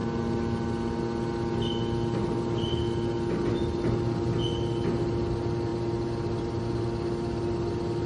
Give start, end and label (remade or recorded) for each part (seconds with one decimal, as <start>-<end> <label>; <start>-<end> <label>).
0.0-8.1 recorded